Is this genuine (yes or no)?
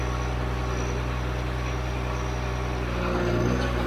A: yes